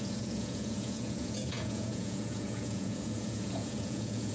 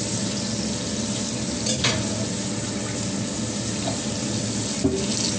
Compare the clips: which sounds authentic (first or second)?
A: second